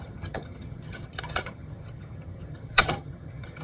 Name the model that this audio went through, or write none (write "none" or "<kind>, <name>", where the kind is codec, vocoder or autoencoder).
vocoder, HiFi-GAN